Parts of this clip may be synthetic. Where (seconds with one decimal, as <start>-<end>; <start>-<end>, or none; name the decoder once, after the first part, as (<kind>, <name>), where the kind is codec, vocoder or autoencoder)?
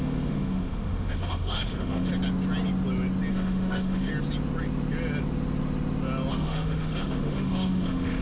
0.0-2.1 (autoencoder, DAC-VAE); 3.3-4.1; 6.3-8.2